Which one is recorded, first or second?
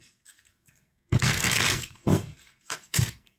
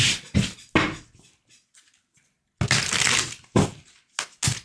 second